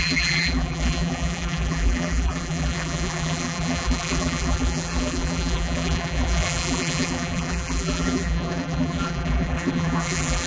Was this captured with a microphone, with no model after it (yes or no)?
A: no